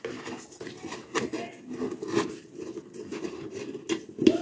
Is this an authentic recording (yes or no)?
yes